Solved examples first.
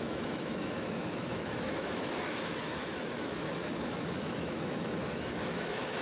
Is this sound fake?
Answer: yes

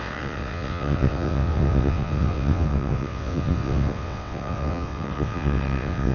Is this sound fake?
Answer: yes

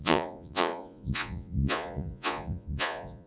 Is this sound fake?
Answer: yes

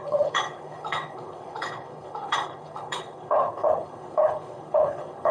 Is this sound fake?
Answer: yes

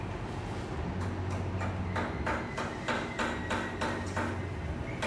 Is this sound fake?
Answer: no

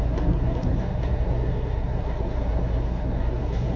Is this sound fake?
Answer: yes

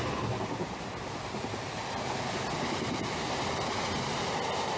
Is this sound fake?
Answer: no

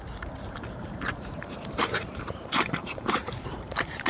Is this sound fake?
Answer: yes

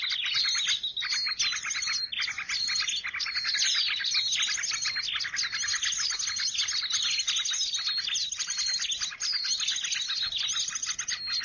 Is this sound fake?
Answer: no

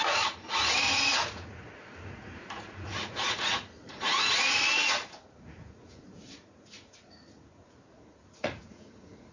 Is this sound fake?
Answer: yes